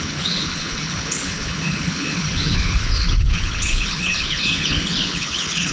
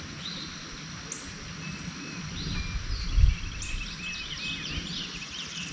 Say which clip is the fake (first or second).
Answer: first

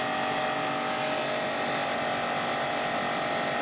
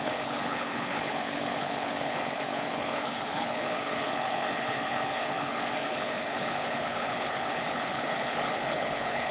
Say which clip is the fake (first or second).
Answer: second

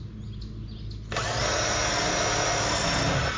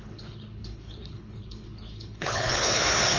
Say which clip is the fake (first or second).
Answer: second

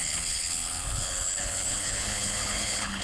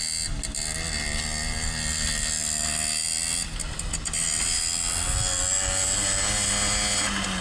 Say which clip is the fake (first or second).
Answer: first